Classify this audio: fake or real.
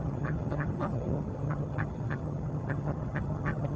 fake